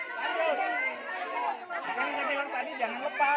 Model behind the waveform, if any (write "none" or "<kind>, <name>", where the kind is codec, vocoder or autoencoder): none